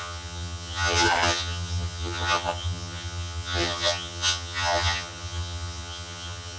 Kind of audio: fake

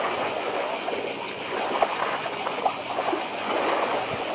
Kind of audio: fake